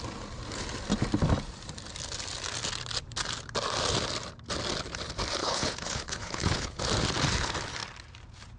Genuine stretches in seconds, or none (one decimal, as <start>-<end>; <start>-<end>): 0.0-5.4; 6.8-8.6